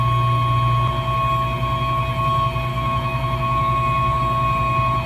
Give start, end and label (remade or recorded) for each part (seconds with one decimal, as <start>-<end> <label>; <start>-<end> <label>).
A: 0.0-2.7 recorded; 2.7-4.2 remade; 4.2-5.1 recorded